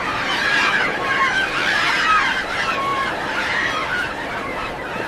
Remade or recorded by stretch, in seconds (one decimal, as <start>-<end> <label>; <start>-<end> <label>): 0.0-5.1 recorded